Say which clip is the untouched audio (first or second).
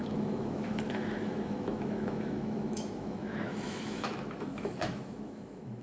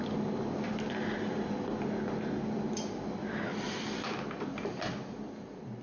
second